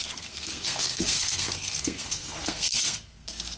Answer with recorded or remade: remade